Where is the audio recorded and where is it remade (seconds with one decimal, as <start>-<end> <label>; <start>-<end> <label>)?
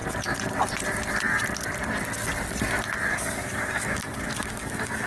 0.0-3.1 recorded; 3.1-5.1 remade